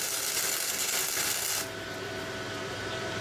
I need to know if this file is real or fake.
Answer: real